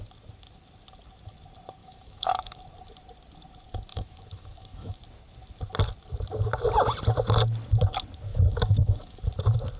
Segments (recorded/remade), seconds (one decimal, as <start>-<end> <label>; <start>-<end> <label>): 0.0-1.8 recorded; 1.8-2.6 remade; 2.6-3.9 recorded; 3.9-5.0 remade; 5.0-8.3 recorded; 8.3-9.2 remade; 9.2-9.8 recorded